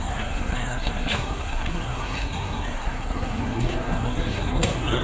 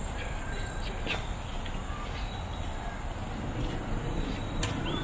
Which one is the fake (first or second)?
first